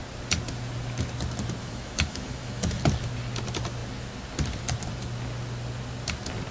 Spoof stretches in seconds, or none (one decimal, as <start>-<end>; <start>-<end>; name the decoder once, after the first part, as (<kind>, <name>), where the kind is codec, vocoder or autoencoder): 1.6-2.8 (autoencoder, DAC-VAE)